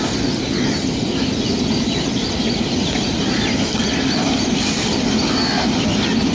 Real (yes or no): yes